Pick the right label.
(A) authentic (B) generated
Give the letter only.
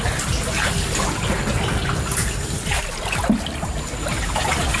A